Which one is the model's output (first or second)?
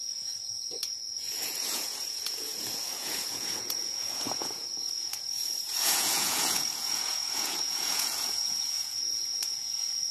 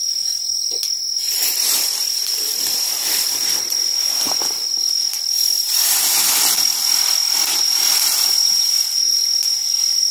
first